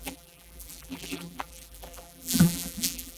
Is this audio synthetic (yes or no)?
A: yes